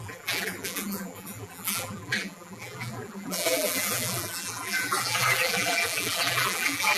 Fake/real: fake